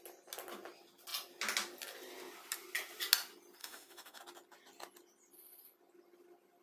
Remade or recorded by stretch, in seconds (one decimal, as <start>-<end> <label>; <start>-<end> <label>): 0.0-3.6 recorded; 3.6-4.2 remade; 4.2-6.6 recorded